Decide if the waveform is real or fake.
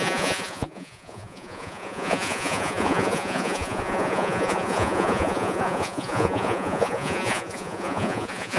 fake